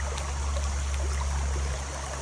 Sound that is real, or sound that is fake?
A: real